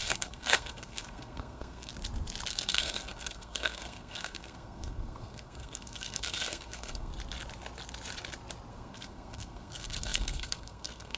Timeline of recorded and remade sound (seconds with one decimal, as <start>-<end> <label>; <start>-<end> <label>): 0.0-1.9 remade; 1.9-2.5 recorded; 2.5-7.1 remade; 7.1-8.7 recorded; 8.7-11.2 remade